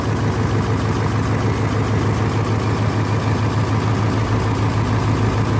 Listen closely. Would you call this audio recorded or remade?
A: recorded